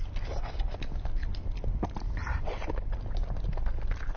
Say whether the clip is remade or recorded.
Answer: recorded